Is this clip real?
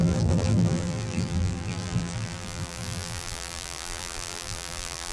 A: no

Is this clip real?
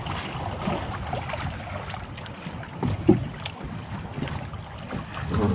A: yes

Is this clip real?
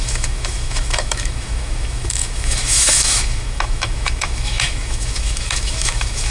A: no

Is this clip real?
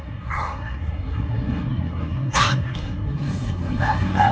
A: no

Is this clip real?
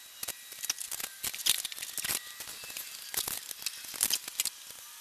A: yes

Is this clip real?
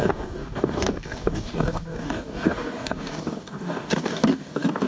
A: no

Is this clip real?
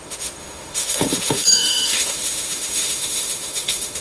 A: no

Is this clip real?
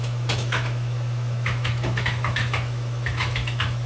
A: no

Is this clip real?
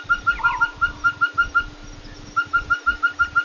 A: yes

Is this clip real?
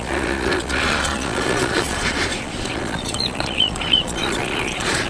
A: no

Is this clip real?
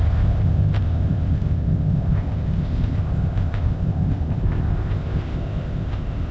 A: no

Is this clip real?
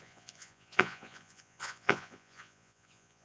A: no